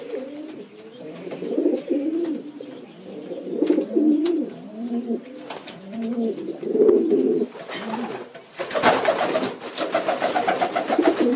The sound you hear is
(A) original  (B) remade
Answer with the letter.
B